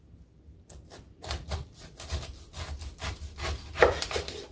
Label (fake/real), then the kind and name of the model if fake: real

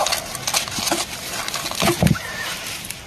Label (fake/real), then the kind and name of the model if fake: real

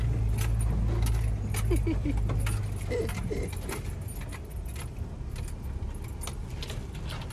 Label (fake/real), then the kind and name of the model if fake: real